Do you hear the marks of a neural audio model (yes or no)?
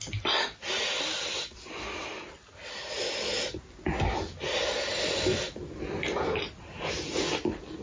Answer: no